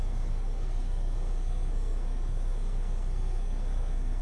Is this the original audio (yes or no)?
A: no